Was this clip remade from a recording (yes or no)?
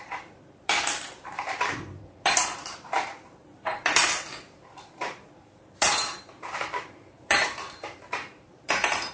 yes